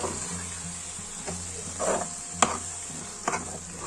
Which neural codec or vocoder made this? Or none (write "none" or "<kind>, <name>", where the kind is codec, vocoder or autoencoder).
none